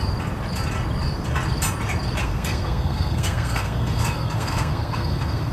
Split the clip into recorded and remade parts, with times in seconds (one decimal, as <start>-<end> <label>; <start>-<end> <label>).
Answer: 0.0-2.2 recorded; 2.2-5.5 remade